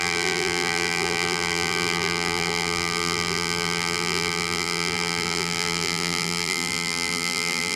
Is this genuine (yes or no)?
no